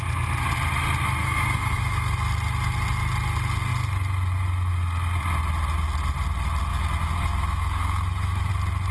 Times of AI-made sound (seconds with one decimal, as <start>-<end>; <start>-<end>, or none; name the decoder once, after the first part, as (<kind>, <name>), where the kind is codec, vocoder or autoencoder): 1.2-2.1 (autoencoder, DAC-VAE); 6.7-8.5